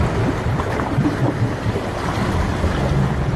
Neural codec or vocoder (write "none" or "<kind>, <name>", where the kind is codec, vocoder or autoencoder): none